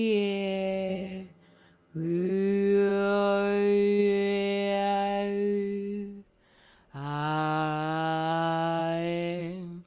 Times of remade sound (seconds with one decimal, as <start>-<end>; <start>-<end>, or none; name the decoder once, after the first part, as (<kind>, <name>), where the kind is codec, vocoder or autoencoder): 0.9-2.3 (vocoder, HiFi-GAN)